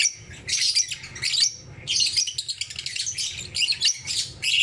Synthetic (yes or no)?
no